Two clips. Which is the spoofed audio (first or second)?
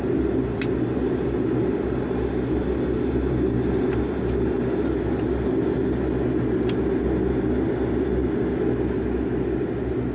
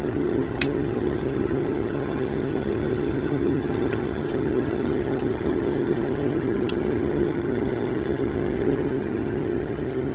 second